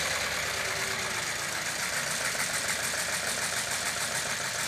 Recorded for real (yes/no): yes